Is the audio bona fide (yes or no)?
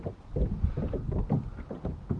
yes